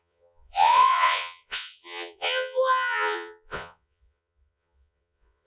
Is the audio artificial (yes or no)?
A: yes